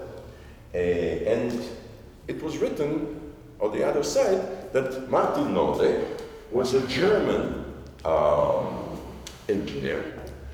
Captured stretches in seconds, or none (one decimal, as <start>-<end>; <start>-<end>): 0.0-6.0; 7.1-8.4; 10.1-10.5